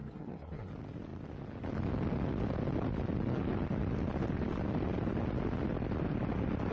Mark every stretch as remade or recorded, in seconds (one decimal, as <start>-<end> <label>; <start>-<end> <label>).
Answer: 0.0-0.7 remade; 0.7-6.7 recorded